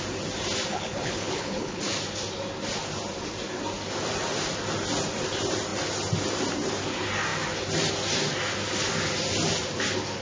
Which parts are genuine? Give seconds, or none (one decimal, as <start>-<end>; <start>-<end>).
0.0-0.7; 1.8-10.2